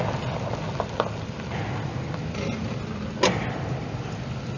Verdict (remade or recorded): recorded